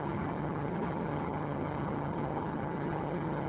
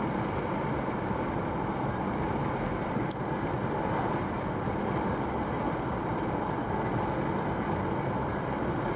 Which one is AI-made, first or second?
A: first